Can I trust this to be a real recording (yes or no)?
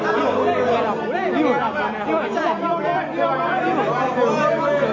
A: yes